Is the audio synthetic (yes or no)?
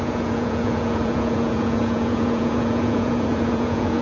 yes